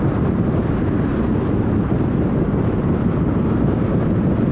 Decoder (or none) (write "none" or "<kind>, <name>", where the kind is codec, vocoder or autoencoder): none